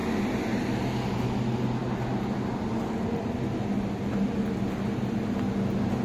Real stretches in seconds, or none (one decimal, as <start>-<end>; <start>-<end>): 0.0-6.0